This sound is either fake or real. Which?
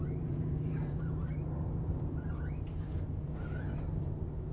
fake